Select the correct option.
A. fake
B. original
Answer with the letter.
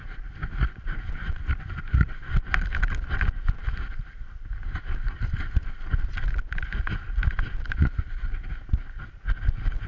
B